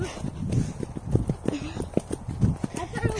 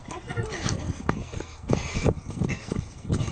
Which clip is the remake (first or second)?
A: second